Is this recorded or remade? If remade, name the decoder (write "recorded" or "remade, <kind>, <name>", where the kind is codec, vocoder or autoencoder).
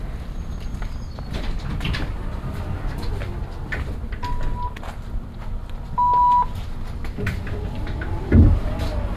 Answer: recorded